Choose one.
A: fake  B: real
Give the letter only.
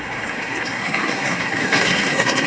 A